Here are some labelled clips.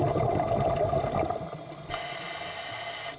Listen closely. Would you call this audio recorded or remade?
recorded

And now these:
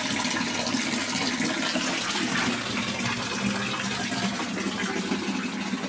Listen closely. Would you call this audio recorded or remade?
recorded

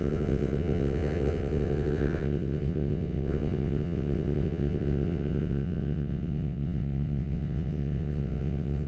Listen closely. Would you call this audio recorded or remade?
remade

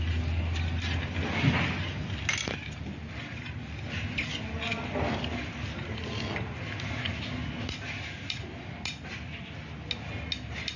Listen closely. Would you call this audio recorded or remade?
recorded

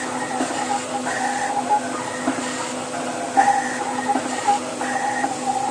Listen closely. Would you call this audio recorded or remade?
recorded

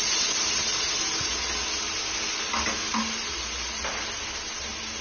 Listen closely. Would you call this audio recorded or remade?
recorded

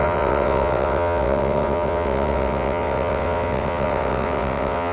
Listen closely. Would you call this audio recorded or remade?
remade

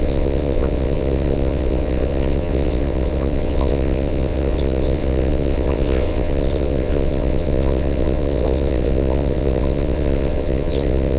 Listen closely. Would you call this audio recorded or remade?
remade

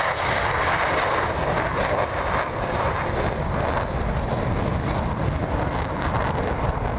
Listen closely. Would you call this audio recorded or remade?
recorded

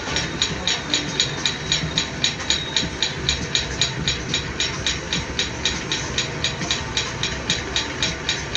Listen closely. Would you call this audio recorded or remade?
recorded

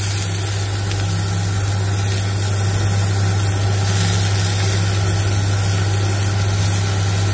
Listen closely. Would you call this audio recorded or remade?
recorded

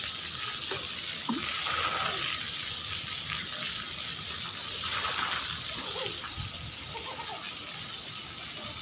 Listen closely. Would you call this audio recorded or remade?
recorded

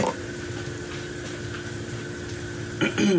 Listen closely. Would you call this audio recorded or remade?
recorded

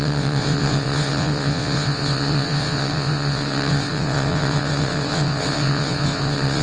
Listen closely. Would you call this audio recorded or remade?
remade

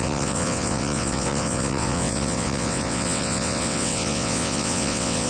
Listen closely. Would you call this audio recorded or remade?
remade